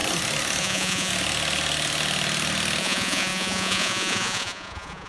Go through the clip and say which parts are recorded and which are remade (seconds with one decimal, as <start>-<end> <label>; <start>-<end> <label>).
0.0-0.6 recorded; 0.6-1.1 remade; 1.1-2.8 recorded; 2.8-5.1 remade

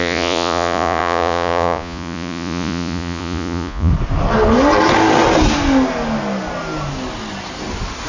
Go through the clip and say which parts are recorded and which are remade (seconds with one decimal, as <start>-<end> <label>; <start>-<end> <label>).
0.0-3.9 remade; 3.9-8.1 recorded

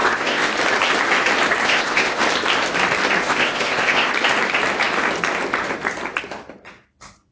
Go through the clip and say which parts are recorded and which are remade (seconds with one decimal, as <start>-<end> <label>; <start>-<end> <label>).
0.0-0.5 remade; 0.5-1.6 recorded; 1.6-2.2 remade; 2.2-3.2 recorded; 3.2-4.1 remade; 4.1-7.3 recorded

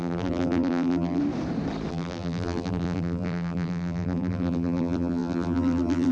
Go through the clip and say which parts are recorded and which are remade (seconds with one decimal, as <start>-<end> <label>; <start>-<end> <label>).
0.0-1.2 remade; 1.2-1.9 recorded; 1.9-6.1 remade

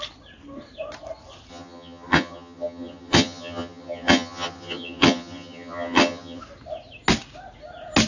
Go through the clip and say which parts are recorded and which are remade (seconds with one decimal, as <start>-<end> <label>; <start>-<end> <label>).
0.0-1.5 recorded; 1.5-6.4 remade; 6.4-8.1 recorded

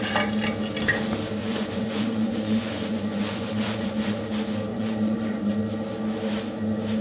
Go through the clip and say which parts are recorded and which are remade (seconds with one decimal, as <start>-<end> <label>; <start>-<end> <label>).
0.0-1.4 recorded; 1.4-4.2 remade; 4.2-4.7 recorded; 4.7-5.5 remade; 5.5-7.0 recorded

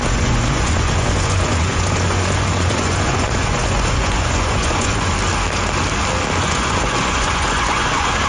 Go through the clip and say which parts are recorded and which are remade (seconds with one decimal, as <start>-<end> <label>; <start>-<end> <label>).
0.0-5.1 remade; 5.1-6.4 recorded; 6.4-8.3 remade

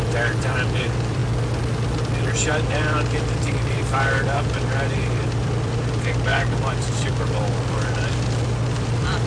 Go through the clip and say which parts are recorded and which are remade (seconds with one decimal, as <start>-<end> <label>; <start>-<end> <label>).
0.0-1.2 remade; 1.2-2.5 recorded; 2.5-9.3 remade